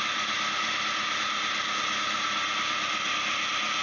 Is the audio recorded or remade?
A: recorded